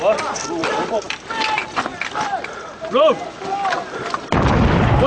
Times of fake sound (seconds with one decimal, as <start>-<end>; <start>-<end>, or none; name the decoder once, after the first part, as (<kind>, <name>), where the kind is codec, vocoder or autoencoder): 0.6-1.2 (vocoder, BigVGAN v2); 1.6-2.4